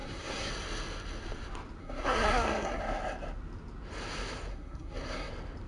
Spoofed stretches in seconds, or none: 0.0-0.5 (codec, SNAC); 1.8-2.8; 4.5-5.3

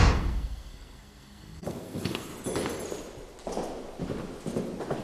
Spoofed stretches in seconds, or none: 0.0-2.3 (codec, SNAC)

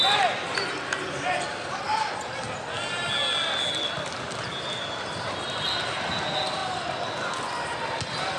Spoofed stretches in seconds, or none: none

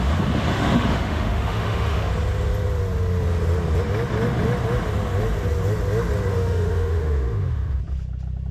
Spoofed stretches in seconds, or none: 0.5-2.1 (autoencoder, DAC-VAE); 6.3-7.8

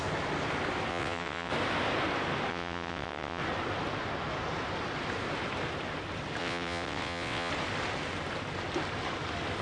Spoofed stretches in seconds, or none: 0.9-1.5 (vocoder, WaveNeXt); 2.5-3.4; 6.4-7.5